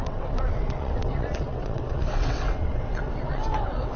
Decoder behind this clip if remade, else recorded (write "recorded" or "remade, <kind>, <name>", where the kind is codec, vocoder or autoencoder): remade, vocoder, WaveNeXt